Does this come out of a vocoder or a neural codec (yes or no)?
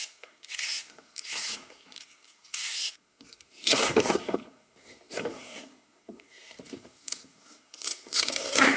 yes